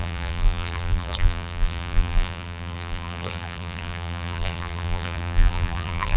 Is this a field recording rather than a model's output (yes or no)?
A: no